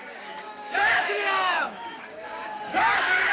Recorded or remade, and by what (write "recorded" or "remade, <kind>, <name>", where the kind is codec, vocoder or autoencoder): remade, codec, DAC